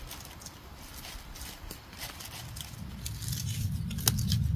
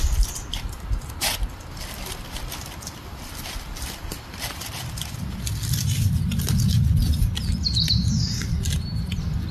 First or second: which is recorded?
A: first